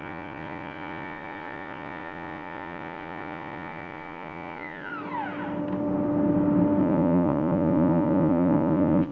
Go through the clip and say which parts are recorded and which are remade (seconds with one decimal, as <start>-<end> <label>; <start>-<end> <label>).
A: 0.0-4.9 remade; 4.9-6.8 recorded; 6.8-9.1 remade

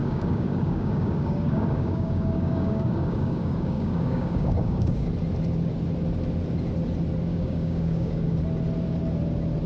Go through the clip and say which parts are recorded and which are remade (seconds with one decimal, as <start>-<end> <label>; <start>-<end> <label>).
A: 0.0-5.1 remade; 5.1-7.3 recorded; 7.3-8.4 remade; 8.4-9.7 recorded